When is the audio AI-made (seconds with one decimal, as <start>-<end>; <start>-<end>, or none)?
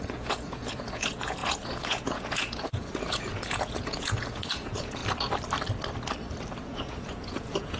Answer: 0.0-5.0; 6.6-7.8